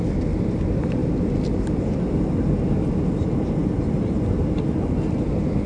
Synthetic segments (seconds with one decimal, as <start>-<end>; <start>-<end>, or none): none